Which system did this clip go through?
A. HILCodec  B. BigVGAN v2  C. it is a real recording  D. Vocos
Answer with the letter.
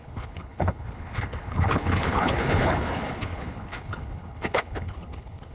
A